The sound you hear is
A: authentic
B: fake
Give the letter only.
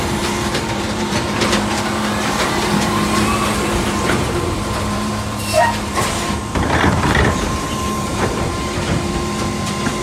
B